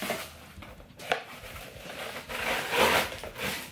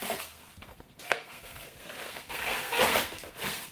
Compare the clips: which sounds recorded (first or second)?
first